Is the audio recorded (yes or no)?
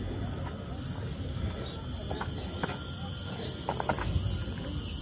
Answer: yes